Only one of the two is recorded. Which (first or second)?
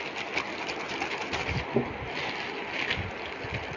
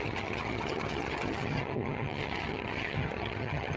first